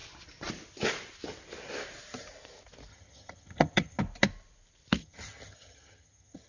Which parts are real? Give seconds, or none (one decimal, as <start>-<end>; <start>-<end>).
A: 0.0-2.9; 4.0-5.0